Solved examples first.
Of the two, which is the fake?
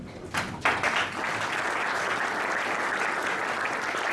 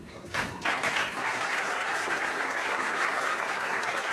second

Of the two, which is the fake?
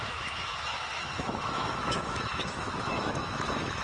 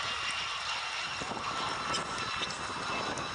first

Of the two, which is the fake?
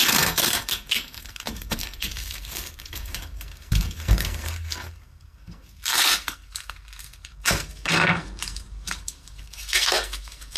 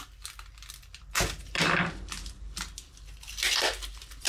first